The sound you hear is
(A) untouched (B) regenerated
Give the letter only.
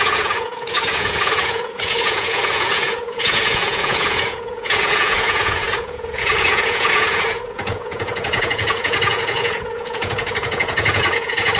B